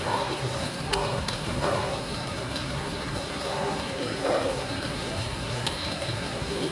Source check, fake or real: fake